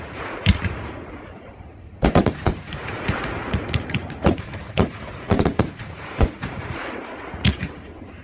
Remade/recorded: remade